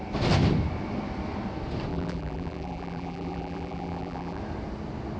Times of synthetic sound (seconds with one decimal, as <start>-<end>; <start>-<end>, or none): 1.9-4.4